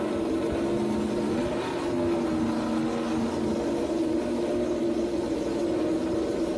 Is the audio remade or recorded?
recorded